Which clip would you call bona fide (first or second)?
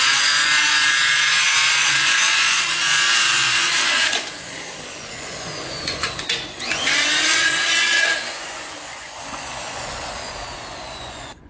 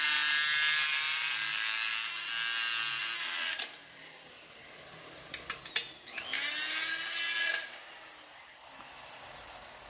second